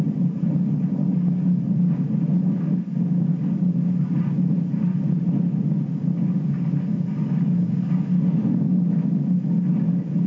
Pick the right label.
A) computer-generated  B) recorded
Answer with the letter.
B